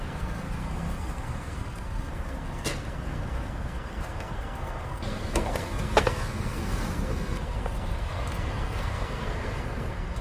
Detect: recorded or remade remade